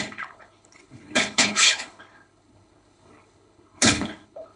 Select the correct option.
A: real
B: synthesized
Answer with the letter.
B